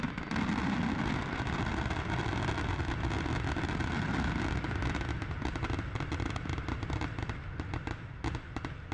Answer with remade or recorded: recorded